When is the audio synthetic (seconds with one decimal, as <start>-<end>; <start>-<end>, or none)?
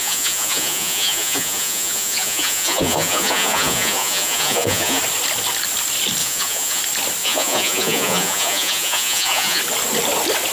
0.0-5.0; 6.2-6.8; 7.2-9.6